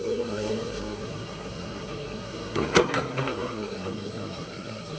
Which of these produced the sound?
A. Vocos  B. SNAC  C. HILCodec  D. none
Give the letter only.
B